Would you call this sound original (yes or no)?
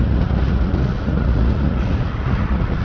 no